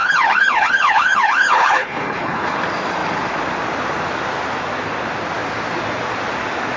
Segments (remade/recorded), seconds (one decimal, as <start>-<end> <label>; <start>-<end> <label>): 0.0-2.6 remade; 2.6-6.8 recorded